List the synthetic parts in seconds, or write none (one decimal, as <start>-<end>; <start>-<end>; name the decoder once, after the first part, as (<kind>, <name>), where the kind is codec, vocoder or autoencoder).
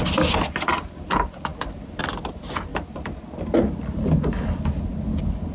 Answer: 2.7-3.6 (vocoder, BigVGAN v2)